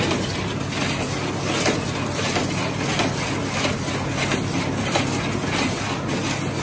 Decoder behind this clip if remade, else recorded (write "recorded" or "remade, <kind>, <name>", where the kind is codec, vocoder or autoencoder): recorded